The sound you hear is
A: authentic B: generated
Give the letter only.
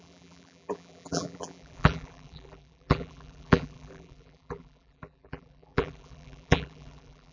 B